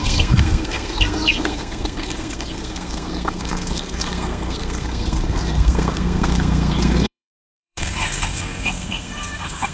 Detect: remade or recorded remade